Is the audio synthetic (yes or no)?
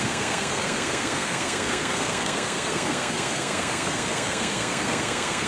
yes